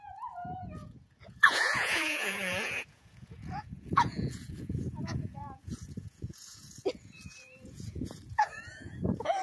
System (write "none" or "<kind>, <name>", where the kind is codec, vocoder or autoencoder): vocoder, Vocos